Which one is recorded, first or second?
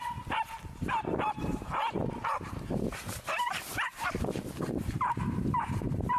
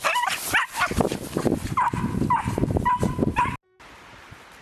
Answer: second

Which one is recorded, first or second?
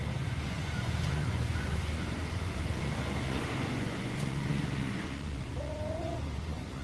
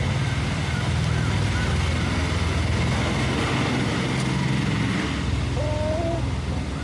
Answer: second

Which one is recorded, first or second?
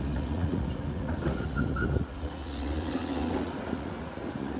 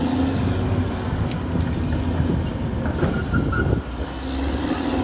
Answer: second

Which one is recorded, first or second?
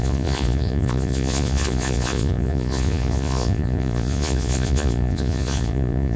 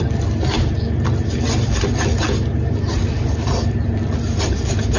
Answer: second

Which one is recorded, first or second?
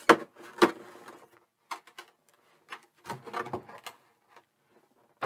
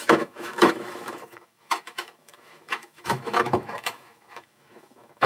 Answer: first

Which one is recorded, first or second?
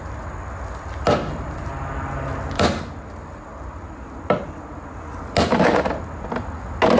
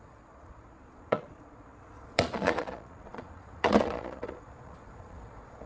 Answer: first